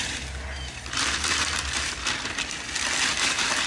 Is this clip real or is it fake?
real